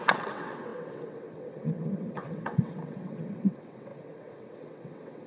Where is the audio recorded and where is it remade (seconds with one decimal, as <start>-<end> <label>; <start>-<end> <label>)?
0.0-5.3 remade